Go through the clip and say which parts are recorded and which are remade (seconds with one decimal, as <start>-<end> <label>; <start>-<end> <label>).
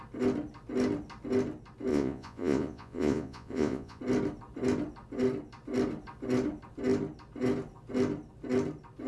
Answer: 0.0-1.9 recorded; 1.9-4.0 remade; 4.0-9.1 recorded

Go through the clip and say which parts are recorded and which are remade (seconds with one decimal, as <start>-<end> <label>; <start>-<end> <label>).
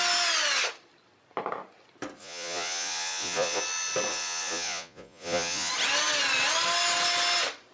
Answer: 0.0-2.2 recorded; 2.2-3.6 remade; 3.6-4.1 recorded; 4.1-5.7 remade; 5.7-7.7 recorded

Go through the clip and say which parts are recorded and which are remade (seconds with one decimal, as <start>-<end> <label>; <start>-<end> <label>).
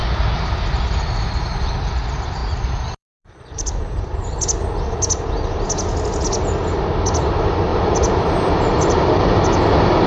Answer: 0.0-2.4 recorded; 2.4-4.0 remade; 4.0-7.7 recorded; 7.7-9.1 remade; 9.1-10.1 recorded